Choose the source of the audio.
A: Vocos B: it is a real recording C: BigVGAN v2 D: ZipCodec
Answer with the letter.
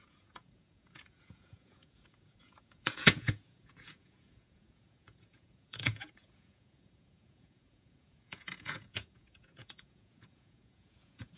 A